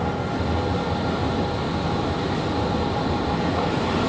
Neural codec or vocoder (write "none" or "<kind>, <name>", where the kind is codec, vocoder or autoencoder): none